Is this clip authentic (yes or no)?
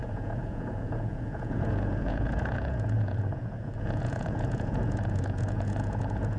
no